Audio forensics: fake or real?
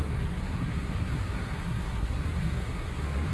fake